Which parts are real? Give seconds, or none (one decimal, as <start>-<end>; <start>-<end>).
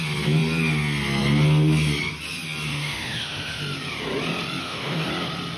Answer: 0.0-2.7; 3.6-4.6; 5.1-5.6